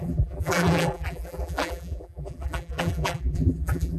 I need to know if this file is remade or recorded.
remade